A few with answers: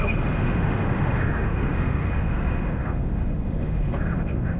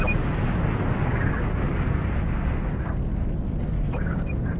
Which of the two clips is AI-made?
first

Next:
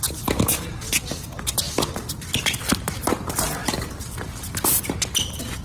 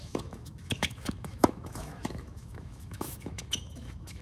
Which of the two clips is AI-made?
second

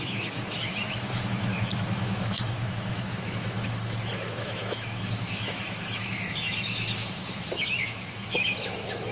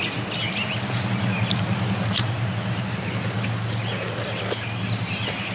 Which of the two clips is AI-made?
first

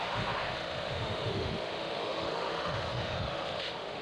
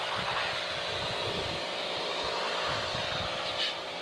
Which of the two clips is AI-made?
first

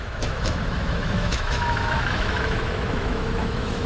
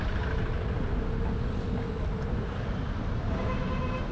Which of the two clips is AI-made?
first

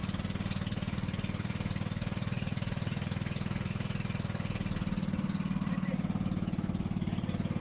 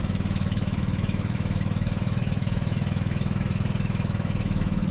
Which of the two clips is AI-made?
second